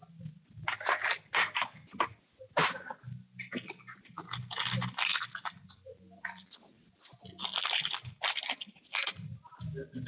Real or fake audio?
real